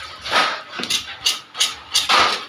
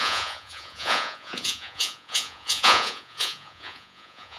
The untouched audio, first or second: first